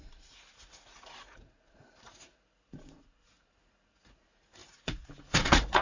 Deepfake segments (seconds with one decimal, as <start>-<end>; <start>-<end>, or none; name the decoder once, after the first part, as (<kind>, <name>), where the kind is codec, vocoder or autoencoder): 0.0-5.8 (vocoder, Vocos)